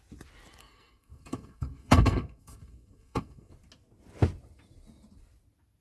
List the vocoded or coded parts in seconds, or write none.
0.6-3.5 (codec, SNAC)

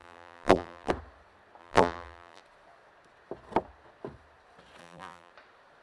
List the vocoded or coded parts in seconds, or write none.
0.0-0.9 (vocoder, BigVGAN v2); 1.6-2.4; 4.8-5.3

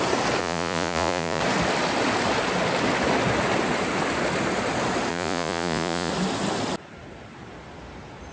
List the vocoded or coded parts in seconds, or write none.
0.4-1.4 (vocoder, Vocos); 5.1-6.1

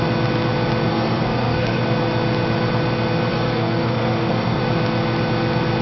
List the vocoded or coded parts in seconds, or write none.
0.9-1.8 (codec, SNAC); 3.3-4.6